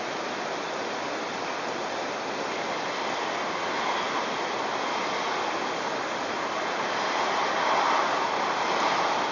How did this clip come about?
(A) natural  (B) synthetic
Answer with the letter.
A